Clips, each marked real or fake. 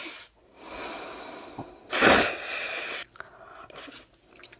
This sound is real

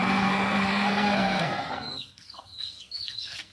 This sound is fake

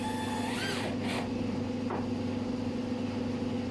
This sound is real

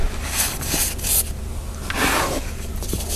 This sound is fake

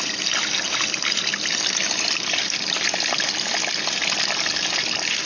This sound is real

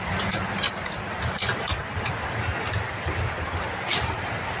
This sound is real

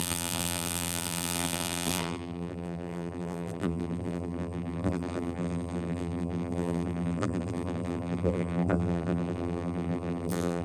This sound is fake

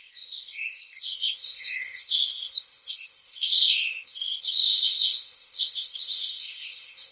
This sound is fake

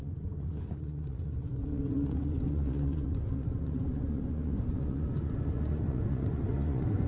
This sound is fake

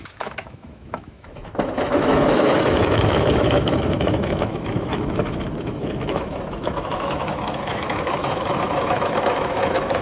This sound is fake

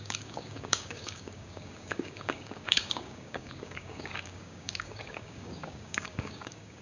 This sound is fake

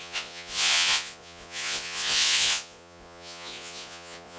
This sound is fake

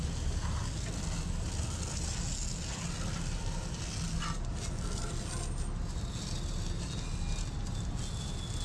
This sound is real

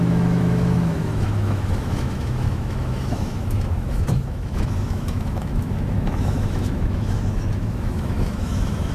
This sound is fake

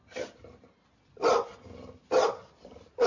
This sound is real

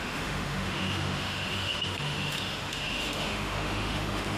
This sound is fake